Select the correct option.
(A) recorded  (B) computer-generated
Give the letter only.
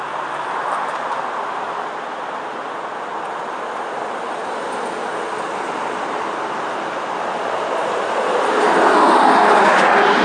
A